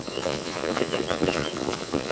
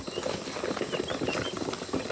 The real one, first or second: second